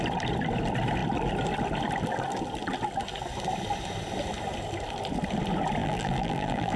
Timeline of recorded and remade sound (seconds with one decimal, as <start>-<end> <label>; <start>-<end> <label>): 0.0-5.8 recorded; 5.8-6.8 remade